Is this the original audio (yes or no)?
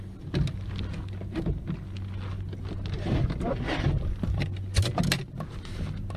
yes